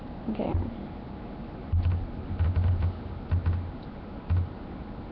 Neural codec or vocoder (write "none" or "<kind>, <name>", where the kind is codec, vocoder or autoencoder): none